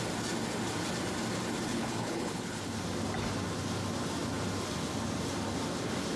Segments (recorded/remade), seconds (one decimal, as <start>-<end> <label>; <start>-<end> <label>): 0.0-1.7 recorded; 1.7-2.7 remade; 2.7-6.2 recorded